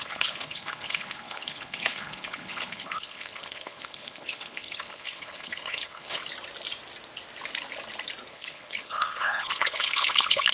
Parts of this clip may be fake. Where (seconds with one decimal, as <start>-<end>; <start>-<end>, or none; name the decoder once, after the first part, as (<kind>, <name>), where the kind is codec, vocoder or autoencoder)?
0.0-6.2 (codec, HILCodec); 8.3-10.5